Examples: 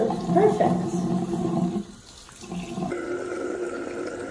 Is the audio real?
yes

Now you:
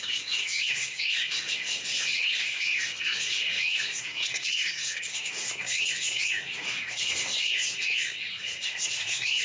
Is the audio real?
no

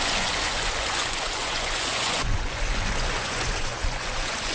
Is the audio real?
no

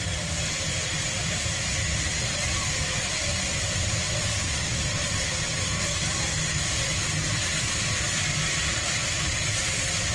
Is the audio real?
yes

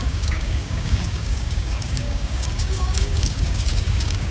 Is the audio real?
no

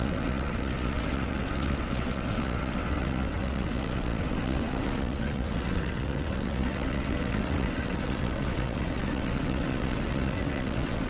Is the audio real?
no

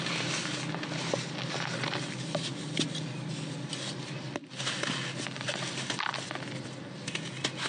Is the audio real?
yes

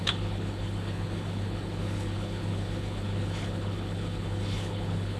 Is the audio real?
no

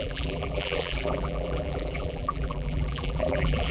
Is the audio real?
no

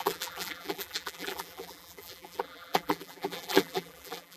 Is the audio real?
no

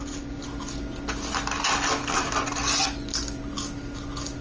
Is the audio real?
yes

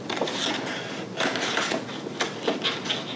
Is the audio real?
yes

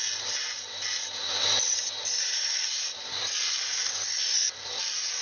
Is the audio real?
yes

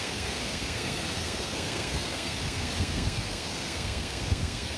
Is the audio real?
no